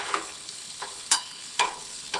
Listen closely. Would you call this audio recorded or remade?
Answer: remade